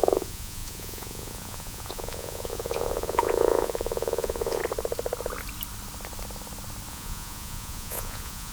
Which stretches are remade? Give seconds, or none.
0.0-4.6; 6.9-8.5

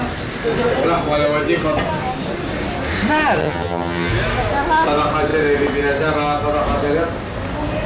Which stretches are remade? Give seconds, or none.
3.4-4.1

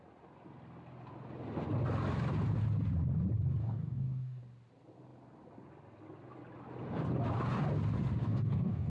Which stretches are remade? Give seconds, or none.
3.6-4.4; 8.2-8.9